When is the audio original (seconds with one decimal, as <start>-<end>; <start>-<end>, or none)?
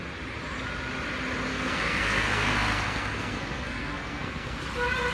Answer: 0.0-1.5; 4.6-5.1